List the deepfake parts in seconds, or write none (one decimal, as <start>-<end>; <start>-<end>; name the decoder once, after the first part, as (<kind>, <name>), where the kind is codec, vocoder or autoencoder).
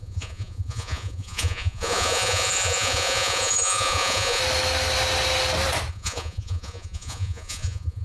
0.0-4.4 (vocoder, Vocos); 5.9-8.0